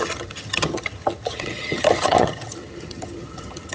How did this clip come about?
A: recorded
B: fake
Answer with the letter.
B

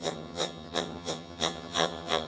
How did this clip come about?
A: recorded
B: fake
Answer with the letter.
B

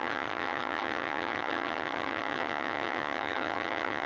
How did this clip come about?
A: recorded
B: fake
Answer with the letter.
B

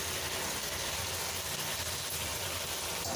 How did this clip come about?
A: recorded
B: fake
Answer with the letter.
A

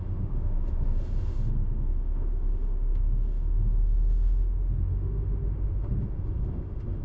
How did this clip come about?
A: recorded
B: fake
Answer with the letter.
B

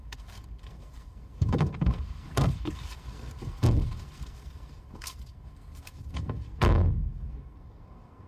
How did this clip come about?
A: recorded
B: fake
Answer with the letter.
B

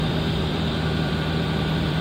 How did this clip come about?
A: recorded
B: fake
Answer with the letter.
B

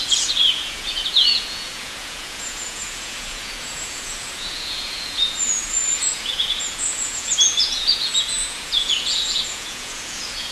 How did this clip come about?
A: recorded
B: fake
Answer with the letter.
B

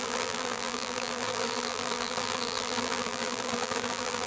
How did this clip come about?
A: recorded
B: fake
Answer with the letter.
B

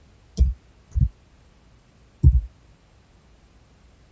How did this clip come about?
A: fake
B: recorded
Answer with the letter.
B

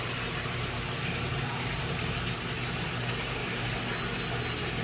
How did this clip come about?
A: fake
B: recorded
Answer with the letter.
B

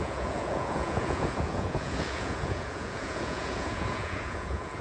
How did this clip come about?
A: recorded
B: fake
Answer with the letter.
B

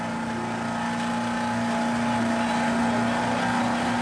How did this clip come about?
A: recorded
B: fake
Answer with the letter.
A